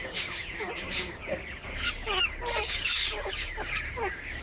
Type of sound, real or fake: fake